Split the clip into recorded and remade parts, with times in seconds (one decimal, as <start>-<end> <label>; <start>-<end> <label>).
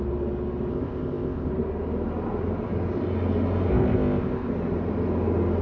0.0-0.7 recorded; 0.7-1.5 remade; 1.5-3.7 recorded; 3.7-4.5 remade; 4.5-5.6 recorded